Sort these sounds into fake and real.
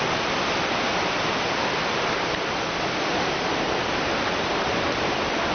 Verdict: fake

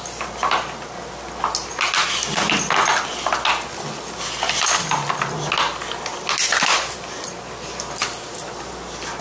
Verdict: real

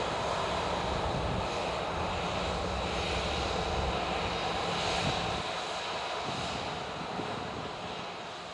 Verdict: real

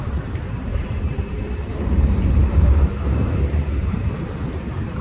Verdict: fake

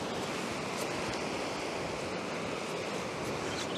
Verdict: real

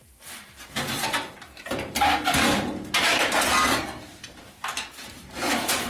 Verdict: fake